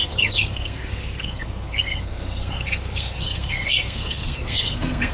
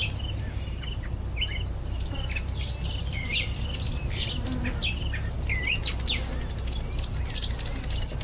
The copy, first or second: first